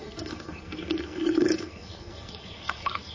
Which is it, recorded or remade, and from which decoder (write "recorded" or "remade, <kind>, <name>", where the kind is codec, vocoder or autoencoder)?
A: remade, codec, SNAC